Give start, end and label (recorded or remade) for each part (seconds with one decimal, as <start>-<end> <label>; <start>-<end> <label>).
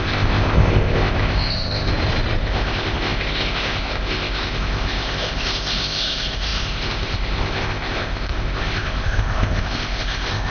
0.0-1.9 remade; 1.9-2.4 recorded; 2.4-10.5 remade